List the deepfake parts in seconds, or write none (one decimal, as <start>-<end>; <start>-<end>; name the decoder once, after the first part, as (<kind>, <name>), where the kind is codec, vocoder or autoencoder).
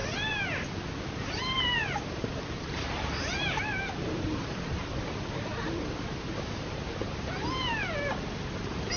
none